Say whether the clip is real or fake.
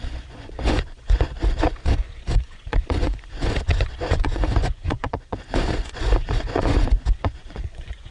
fake